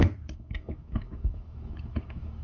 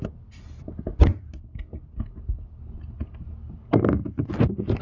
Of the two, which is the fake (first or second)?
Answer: first